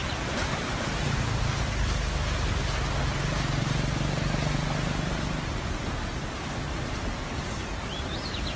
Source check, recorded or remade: recorded